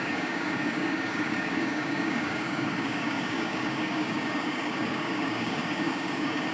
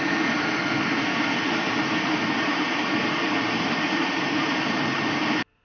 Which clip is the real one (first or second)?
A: second